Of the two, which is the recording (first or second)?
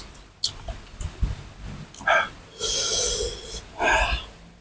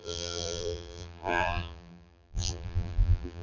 first